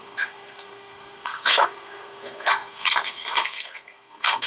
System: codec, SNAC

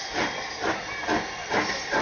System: none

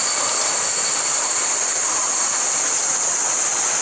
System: none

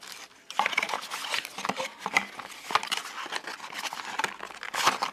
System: none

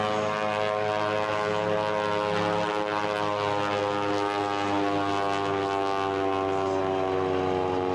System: none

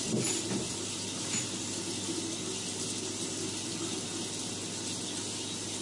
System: none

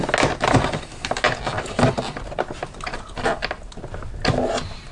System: none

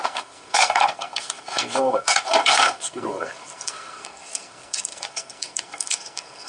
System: codec, SNAC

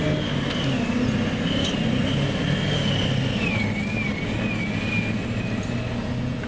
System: none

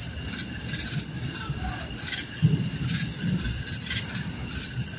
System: none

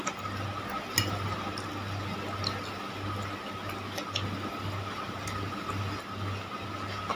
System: none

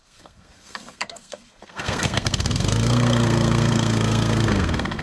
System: codec, SNAC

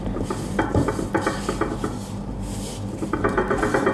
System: none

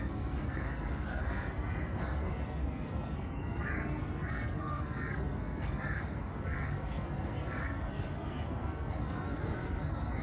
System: codec, SNAC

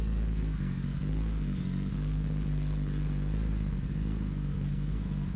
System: codec, SNAC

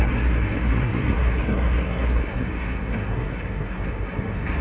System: codec, SNAC